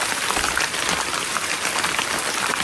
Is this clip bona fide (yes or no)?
yes